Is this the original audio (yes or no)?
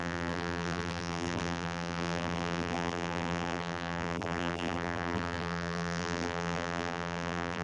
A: no